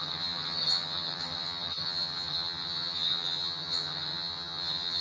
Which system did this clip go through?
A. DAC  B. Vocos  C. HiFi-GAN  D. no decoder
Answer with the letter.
C